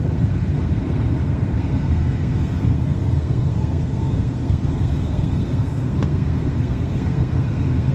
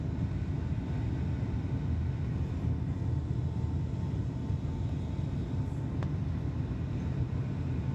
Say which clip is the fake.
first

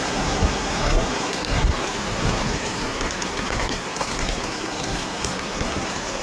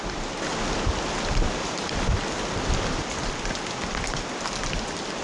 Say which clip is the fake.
first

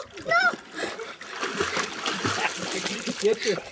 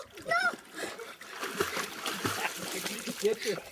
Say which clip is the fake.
second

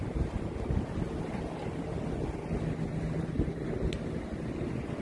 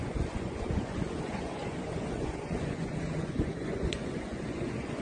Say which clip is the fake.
second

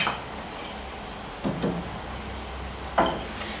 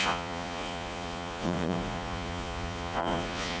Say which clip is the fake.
second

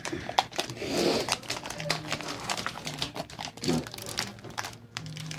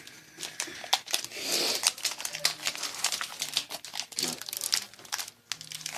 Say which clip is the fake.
first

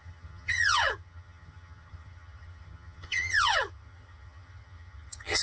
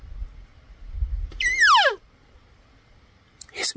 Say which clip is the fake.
first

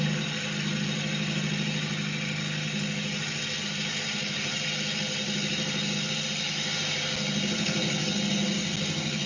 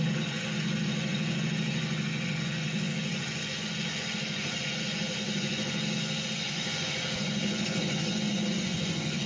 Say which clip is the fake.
second